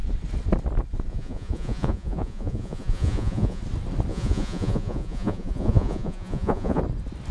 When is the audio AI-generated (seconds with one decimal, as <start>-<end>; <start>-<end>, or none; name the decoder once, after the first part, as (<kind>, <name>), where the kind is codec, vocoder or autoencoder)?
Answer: 1.1-3.6 (vocoder, Vocos); 4.1-6.8